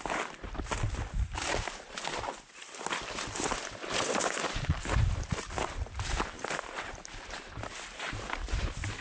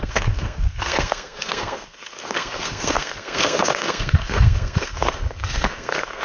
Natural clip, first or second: first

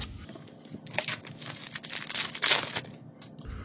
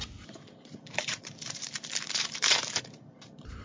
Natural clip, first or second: first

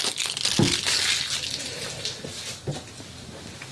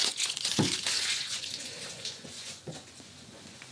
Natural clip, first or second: first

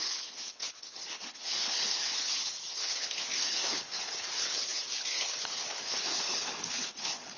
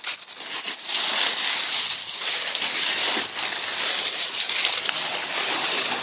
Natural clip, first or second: second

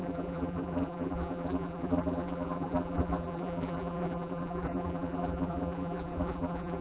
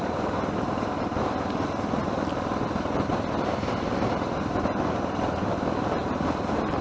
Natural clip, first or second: second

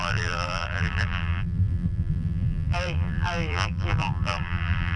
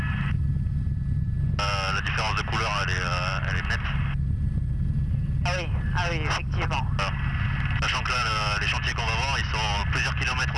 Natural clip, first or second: second